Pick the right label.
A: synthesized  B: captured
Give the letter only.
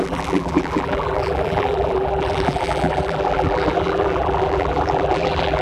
A